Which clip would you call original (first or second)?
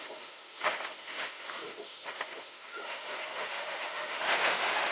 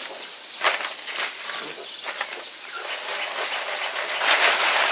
second